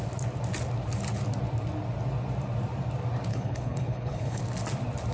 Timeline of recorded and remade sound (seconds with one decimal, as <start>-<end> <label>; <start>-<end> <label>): 0.0-3.3 recorded; 3.3-4.4 remade; 4.4-5.1 recorded